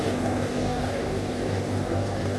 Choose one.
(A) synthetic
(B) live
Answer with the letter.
A